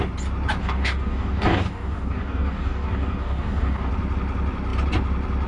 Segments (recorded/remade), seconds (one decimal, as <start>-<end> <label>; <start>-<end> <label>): 0.0-0.6 recorded; 0.6-3.9 remade; 3.9-5.5 recorded